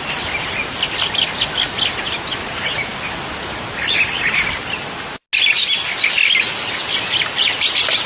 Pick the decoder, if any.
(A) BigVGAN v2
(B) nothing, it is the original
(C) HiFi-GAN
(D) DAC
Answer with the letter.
B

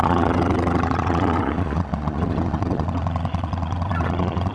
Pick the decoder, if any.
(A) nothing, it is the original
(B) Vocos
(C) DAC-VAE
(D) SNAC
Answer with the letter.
B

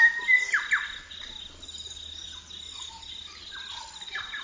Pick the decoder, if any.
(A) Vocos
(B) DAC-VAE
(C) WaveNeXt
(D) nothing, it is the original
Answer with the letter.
D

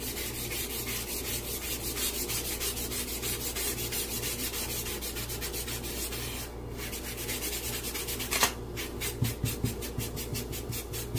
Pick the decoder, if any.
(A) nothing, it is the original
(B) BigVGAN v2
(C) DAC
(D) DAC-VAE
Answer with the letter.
A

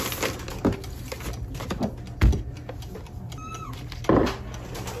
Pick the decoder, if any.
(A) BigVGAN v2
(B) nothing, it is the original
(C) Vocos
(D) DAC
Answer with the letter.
B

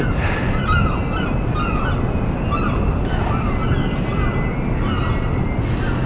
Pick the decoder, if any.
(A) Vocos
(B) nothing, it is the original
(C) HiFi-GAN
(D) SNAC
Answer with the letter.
B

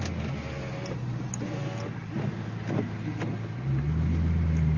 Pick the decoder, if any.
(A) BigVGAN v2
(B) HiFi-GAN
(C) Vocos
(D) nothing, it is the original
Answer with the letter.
D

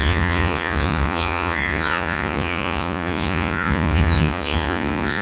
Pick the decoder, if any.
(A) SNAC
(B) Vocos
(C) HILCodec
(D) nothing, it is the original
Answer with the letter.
B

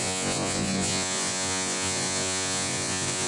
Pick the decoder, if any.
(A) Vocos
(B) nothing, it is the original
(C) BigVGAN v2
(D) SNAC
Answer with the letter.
A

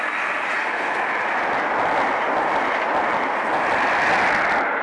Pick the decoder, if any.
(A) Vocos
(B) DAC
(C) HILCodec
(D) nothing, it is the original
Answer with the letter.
D